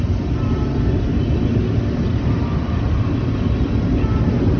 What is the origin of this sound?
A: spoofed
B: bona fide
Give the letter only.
B